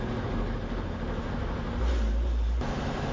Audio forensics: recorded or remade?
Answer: recorded